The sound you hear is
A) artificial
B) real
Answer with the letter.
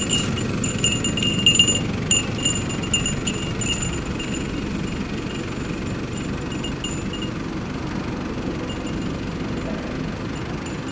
B